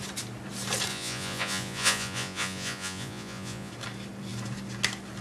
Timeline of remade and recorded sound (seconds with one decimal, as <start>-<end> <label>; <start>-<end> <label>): 0.0-0.9 recorded; 0.9-3.7 remade; 3.7-5.2 recorded